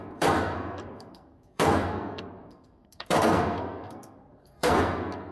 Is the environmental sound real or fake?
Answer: fake